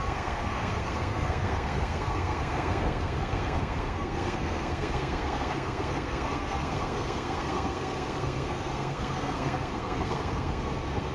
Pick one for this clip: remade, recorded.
remade